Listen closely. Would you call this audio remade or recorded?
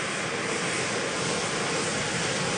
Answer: recorded